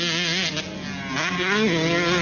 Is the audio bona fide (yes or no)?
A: yes